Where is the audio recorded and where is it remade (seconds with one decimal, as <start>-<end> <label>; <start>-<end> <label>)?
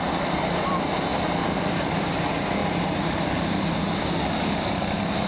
0.0-1.1 recorded; 1.1-2.2 remade; 2.2-2.6 recorded; 2.6-4.0 remade; 4.0-5.3 recorded